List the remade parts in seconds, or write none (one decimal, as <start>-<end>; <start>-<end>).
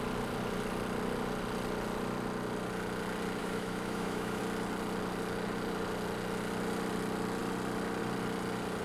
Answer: 3.4-4.4